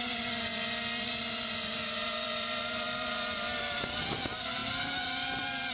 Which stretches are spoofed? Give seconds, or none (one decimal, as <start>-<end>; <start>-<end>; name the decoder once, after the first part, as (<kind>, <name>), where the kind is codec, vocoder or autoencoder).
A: 0.0-5.7 (vocoder, BigVGAN v2)